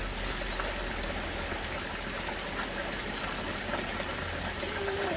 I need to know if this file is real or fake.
real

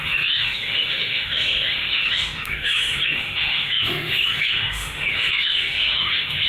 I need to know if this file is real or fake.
fake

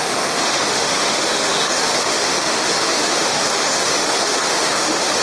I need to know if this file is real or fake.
fake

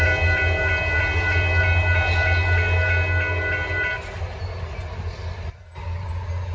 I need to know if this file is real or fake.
real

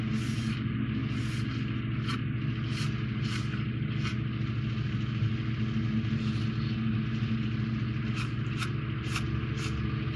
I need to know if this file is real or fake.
real